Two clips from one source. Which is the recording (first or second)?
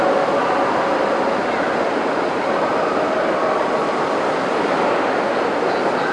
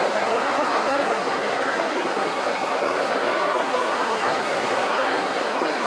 first